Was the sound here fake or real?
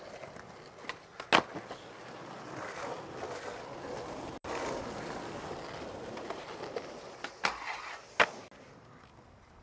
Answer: real